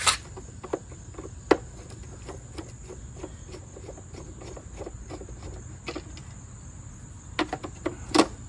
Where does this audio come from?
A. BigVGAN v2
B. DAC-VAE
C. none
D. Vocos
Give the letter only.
C